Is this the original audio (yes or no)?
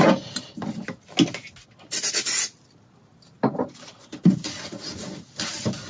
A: yes